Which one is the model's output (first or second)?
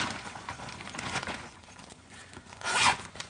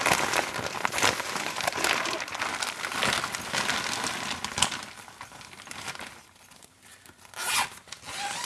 first